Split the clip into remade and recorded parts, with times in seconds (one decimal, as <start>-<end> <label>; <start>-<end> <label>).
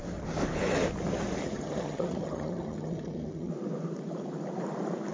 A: 0.0-1.4 recorded; 1.4-3.5 remade; 3.5-5.1 recorded